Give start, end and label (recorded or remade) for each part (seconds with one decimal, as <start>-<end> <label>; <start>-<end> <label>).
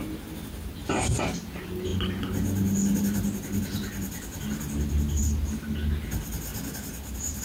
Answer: 0.0-7.4 recorded